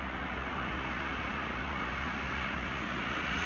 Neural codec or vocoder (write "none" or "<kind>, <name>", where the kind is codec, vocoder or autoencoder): vocoder, Vocos